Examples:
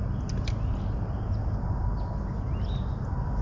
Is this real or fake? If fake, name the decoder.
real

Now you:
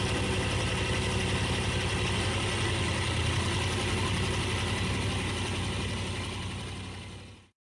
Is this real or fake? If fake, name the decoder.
real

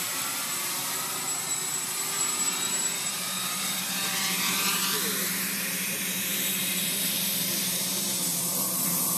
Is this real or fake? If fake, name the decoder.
fake, vocoder, BigVGAN v2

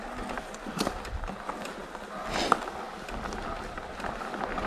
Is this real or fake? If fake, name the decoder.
real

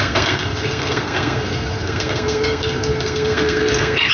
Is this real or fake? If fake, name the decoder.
fake, codec, SNAC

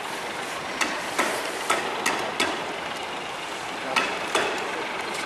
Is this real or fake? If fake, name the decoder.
real